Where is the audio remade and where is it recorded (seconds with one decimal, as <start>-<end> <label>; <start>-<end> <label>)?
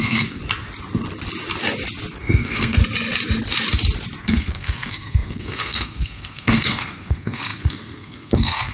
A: 0.0-0.4 remade; 0.4-2.2 recorded; 2.2-2.8 remade; 2.8-4.2 recorded; 4.2-8.7 remade